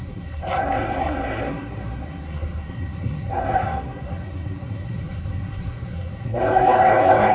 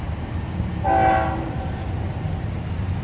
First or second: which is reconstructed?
first